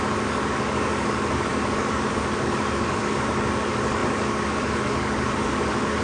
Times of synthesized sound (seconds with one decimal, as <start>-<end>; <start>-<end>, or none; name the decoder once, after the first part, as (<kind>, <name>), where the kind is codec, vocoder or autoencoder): 0.0-6.0 (codec, DAC)